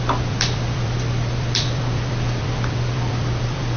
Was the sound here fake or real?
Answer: fake